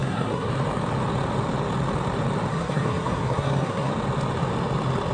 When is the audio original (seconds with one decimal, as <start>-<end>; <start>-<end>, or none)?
0.5-2.5; 3.9-5.1